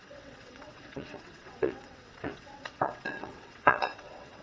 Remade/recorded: remade